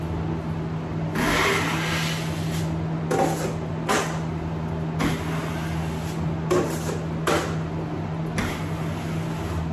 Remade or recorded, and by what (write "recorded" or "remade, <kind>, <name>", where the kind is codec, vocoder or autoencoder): recorded